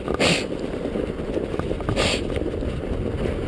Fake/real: real